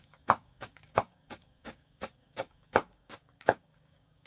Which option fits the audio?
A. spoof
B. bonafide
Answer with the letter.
A